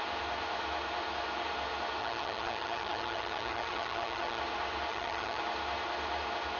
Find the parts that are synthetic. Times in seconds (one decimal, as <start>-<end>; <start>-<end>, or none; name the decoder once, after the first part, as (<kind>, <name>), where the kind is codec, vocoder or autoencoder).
2.0-4.4 (vocoder, HiFi-GAN); 4.9-5.4